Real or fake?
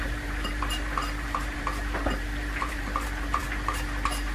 fake